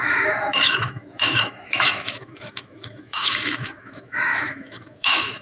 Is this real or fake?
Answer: fake